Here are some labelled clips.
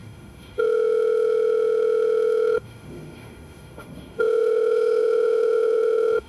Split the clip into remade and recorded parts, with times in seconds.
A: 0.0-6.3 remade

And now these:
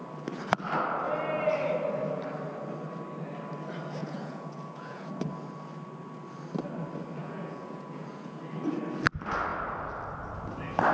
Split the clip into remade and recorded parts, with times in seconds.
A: 0.0-4.0 recorded; 4.0-5.1 remade; 5.1-7.2 recorded; 7.2-8.4 remade; 8.4-10.9 recorded

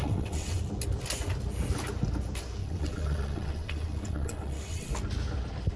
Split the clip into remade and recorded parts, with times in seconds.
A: 0.0-0.6 remade; 0.6-2.6 recorded; 2.6-4.9 remade; 4.9-5.8 recorded

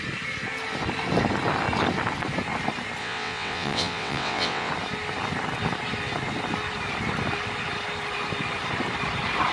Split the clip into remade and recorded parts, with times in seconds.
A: 0.0-3.0 recorded; 3.0-4.7 remade; 4.7-9.5 recorded

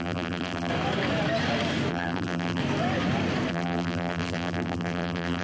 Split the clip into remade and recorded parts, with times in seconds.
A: 0.0-0.7 remade; 0.7-1.9 recorded; 1.9-2.6 remade; 2.6-3.5 recorded; 3.5-5.4 remade